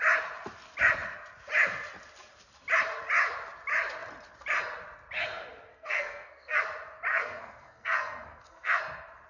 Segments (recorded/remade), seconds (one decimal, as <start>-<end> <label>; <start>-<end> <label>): 0.0-5.7 recorded; 5.7-6.6 remade; 6.6-7.1 recorded; 7.1-8.8 remade; 8.8-9.3 recorded